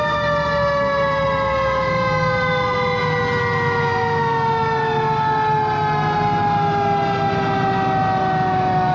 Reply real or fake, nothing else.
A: real